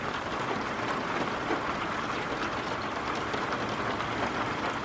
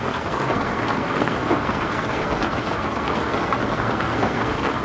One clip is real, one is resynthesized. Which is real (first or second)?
first